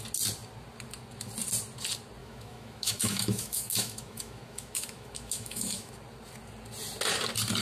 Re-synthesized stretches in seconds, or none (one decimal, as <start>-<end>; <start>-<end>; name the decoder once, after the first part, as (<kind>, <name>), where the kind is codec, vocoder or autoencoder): 2.2-5.9 (autoencoder, DAC-VAE)